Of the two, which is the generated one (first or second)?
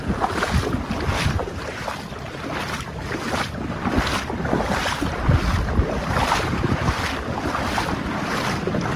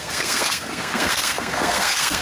second